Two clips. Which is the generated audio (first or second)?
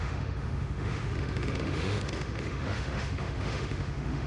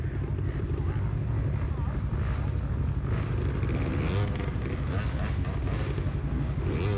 first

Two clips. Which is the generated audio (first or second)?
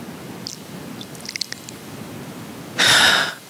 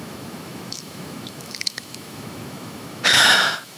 second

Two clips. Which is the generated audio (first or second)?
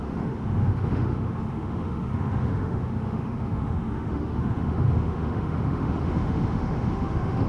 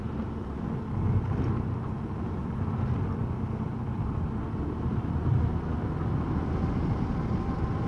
first